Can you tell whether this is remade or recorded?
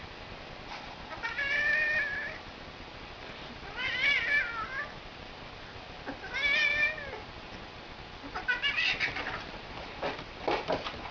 recorded